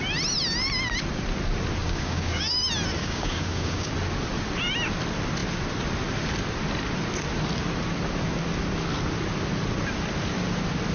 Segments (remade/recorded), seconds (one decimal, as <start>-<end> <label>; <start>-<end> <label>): 0.0-1.8 recorded; 1.8-2.4 remade; 2.4-3.0 recorded; 3.0-3.9 remade; 3.9-10.9 recorded